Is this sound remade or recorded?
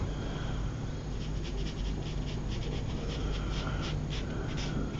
recorded